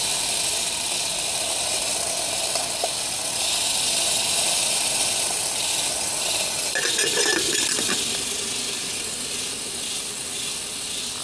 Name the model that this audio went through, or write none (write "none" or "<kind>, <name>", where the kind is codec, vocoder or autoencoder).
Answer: none